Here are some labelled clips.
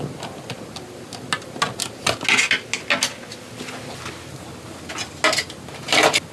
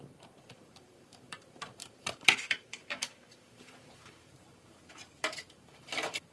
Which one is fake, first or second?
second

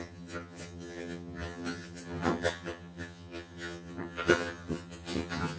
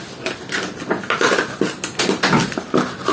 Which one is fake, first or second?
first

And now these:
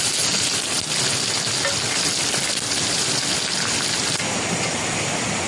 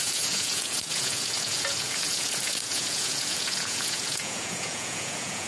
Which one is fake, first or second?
second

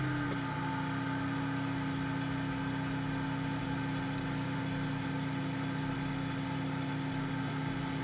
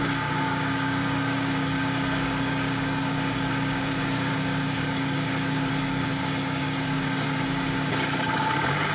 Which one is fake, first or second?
second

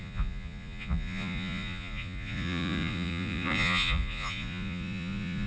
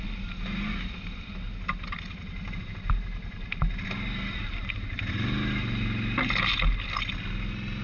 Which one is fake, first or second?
first